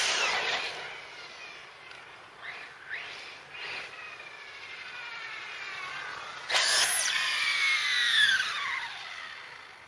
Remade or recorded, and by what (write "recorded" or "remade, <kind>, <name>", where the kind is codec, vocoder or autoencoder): recorded